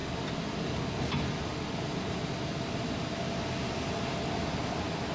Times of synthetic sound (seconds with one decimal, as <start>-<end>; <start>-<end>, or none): none